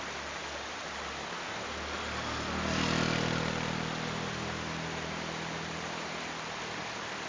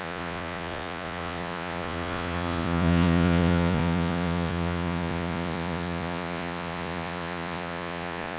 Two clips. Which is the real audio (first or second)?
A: first